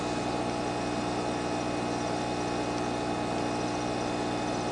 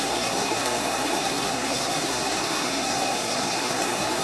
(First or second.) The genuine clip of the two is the first